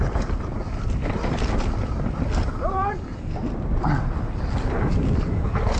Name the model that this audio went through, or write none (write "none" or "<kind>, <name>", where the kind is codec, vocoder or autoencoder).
none